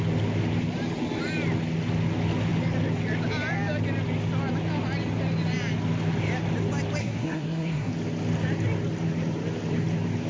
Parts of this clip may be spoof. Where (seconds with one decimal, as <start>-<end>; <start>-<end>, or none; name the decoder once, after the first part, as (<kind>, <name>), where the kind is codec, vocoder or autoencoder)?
7.0-7.9 (codec, SNAC)